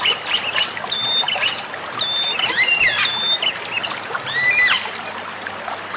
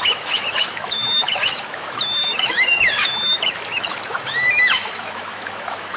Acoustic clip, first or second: first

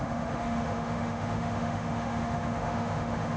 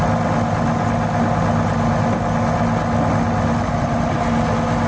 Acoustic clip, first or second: second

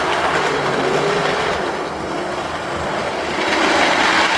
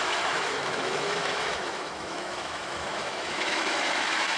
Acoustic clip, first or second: first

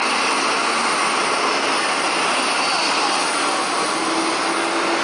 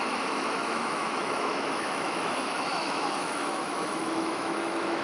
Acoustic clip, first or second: first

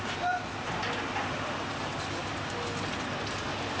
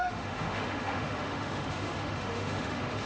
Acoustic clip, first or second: first